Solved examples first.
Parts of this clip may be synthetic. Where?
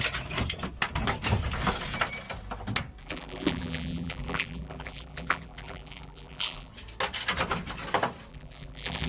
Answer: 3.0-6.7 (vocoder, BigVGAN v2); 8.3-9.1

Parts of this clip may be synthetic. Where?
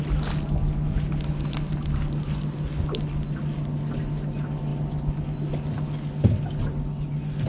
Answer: none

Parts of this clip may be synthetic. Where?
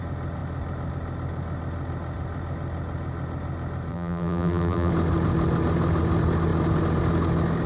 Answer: 3.9-4.9 (vocoder, BigVGAN v2)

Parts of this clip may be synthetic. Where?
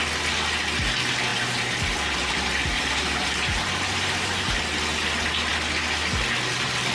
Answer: 1.3-4.5 (vocoder, BigVGAN v2)